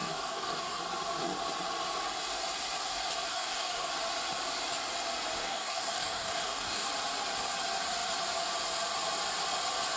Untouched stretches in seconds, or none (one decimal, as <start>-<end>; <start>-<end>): 0.8-3.3; 3.9-5.4; 6.9-10.0